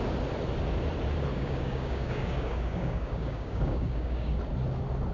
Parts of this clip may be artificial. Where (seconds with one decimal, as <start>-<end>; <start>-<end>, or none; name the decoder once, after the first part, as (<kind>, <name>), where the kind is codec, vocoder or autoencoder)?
1.3-4.4 (codec, DAC)